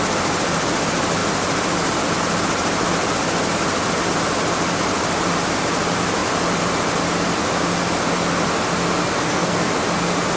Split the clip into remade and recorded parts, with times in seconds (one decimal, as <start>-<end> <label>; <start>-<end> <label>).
0.0-9.0 recorded; 9.0-9.7 remade; 9.7-10.4 recorded